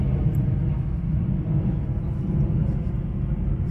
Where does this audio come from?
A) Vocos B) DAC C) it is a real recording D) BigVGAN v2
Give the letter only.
C